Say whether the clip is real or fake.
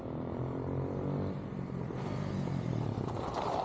fake